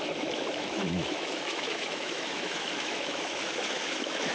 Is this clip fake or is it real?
fake